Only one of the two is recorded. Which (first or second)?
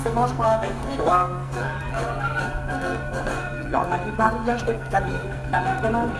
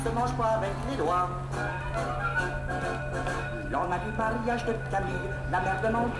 second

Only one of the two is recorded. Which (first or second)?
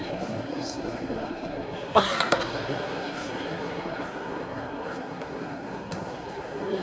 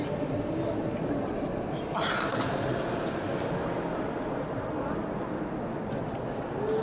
second